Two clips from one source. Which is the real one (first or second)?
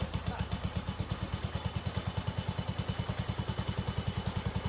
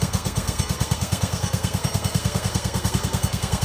first